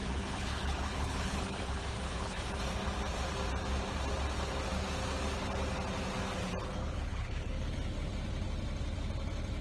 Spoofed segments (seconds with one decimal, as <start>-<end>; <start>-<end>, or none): 0.0-2.4; 6.8-7.6